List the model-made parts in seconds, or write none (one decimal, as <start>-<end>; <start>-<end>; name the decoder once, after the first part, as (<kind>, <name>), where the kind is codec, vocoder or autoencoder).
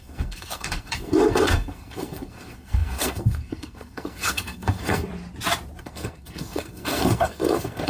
0.0-5.1 (codec, SNAC); 5.8-7.9